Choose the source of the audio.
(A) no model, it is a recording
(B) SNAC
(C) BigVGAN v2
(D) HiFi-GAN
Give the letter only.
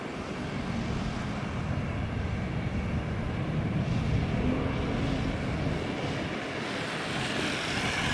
A